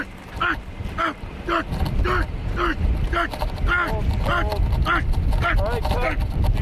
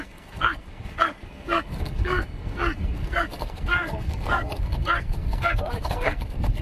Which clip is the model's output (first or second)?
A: second